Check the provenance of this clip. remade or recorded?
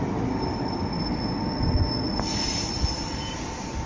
recorded